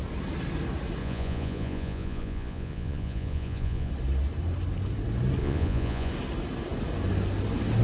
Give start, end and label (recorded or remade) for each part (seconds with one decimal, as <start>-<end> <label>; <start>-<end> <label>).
0.0-1.0 recorded; 1.0-3.9 remade; 3.9-5.4 recorded; 5.4-6.1 remade; 6.1-7.8 recorded